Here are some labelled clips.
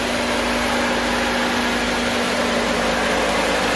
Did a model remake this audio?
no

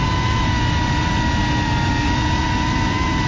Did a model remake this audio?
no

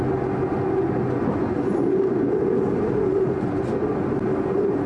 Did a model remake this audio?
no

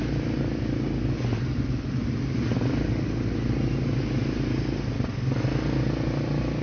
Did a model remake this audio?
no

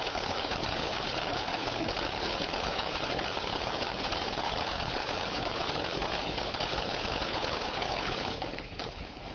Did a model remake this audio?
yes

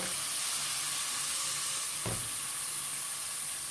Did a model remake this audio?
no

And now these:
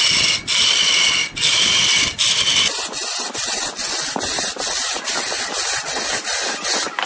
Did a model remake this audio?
no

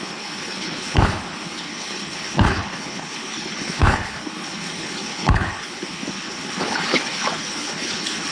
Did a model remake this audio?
yes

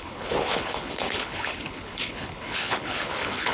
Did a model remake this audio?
yes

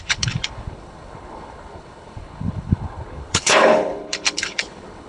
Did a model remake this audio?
yes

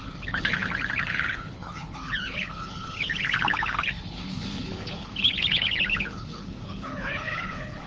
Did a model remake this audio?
yes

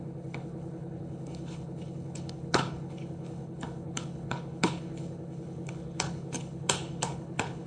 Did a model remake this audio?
yes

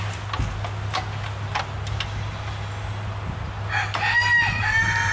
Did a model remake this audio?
no